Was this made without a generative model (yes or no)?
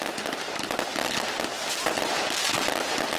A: yes